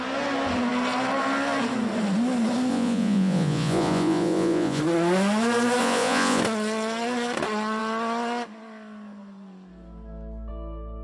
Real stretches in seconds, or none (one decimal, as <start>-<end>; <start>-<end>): 0.0-2.7; 4.8-5.8; 6.4-11.0